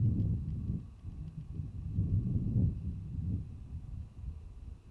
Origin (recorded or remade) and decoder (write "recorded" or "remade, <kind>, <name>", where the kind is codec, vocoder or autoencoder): recorded